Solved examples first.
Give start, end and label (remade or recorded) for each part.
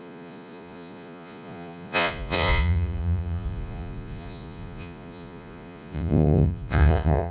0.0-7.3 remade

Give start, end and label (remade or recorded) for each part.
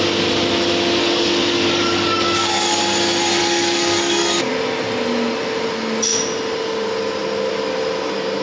0.0-1.0 recorded; 1.0-2.8 remade; 2.8-3.4 recorded; 3.4-4.5 remade; 4.5-8.4 recorded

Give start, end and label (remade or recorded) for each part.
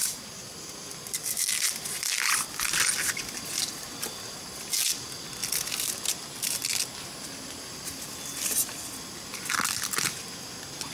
0.0-10.9 recorded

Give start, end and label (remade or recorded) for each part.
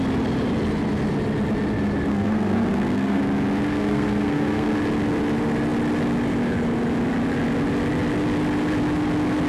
0.0-2.1 recorded; 2.1-3.2 remade; 3.2-3.7 recorded; 3.7-4.7 remade; 4.7-9.5 recorded